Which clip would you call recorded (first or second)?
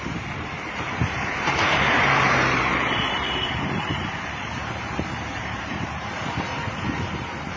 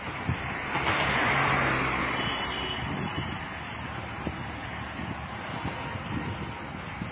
second